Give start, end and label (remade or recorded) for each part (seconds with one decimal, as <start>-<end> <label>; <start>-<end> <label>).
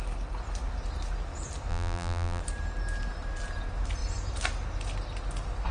0.0-1.7 recorded; 1.7-2.4 remade; 2.4-5.7 recorded